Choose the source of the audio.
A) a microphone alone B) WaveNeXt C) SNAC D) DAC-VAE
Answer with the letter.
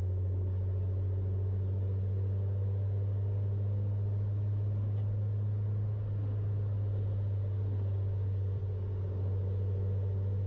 A